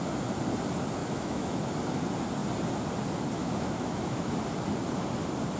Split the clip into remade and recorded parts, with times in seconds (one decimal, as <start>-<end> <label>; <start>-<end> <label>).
0.0-1.0 recorded; 1.0-1.6 remade; 1.6-3.4 recorded; 3.4-4.3 remade; 4.3-5.6 recorded